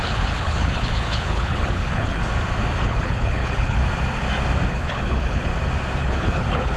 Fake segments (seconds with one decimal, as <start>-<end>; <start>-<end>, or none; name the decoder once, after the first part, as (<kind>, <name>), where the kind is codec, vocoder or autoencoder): 0.0-2.2 (codec, HILCodec); 2.8-3.8; 4.7-5.5; 6.0-6.8